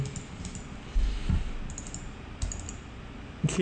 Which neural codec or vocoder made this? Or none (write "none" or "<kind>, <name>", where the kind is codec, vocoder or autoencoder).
none